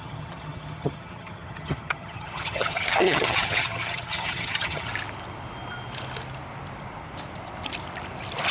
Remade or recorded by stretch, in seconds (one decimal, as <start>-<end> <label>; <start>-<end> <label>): 0.0-4.9 remade; 4.9-8.5 recorded